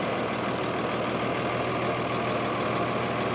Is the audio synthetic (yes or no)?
no